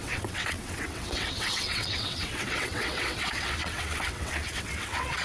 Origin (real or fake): fake